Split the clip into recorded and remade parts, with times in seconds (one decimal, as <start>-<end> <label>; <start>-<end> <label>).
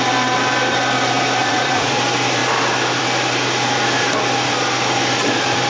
0.0-1.4 recorded; 1.4-2.0 remade; 2.0-5.7 recorded